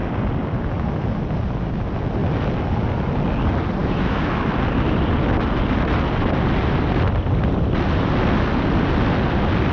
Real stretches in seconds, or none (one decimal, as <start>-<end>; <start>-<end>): 0.0-3.8; 4.5-9.7